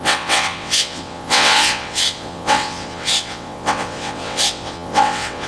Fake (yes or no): yes